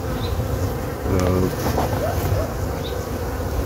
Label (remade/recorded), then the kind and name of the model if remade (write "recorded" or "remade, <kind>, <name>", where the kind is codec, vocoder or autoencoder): recorded